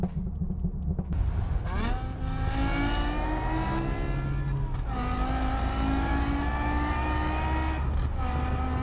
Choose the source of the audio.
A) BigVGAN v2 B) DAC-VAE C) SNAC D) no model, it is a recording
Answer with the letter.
D